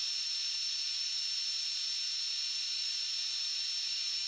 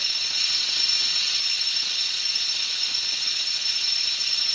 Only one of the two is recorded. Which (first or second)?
first